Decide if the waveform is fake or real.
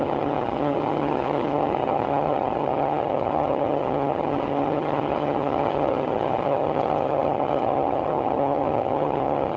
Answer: fake